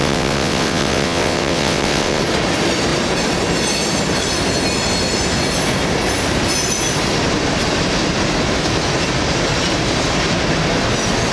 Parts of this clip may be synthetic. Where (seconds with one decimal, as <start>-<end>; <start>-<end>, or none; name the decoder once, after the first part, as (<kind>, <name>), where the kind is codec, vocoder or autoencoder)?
0.0-2.2 (vocoder, WaveNeXt)